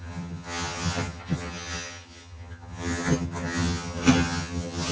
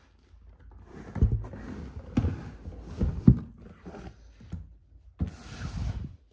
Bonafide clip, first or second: second